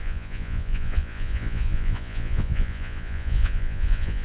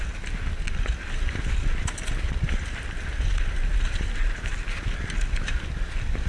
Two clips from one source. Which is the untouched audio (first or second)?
second